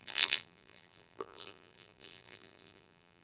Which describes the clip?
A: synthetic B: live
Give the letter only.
A